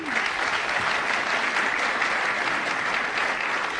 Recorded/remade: recorded